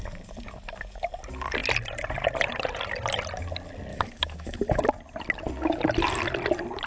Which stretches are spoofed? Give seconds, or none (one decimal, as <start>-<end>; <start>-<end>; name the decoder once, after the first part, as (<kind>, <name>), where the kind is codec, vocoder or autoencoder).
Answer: 3.9-4.8 (autoencoder, DAC-VAE)